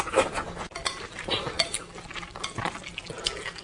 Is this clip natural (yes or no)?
yes